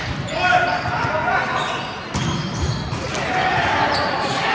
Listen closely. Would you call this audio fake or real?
real